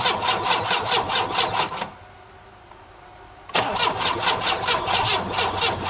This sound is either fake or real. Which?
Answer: real